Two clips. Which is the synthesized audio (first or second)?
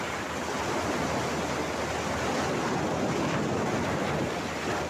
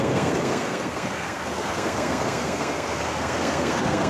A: second